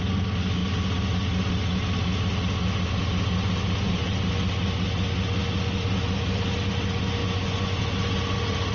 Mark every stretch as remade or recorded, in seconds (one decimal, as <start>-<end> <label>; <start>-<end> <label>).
0.0-7.2 recorded; 7.2-7.8 remade; 7.8-8.7 recorded